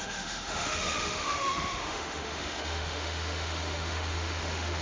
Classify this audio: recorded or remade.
remade